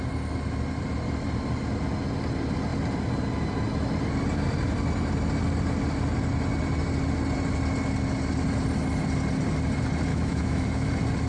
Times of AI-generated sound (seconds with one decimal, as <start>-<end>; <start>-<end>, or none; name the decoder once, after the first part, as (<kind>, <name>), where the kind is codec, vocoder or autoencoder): 10.1-10.9 (autoencoder, DAC-VAE)